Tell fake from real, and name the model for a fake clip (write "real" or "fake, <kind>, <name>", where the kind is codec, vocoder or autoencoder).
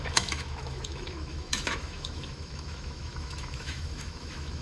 fake, autoencoder, DAC-VAE